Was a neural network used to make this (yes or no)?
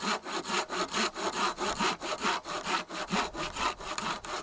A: no